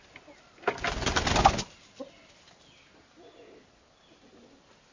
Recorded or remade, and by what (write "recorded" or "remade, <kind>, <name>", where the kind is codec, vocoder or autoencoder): recorded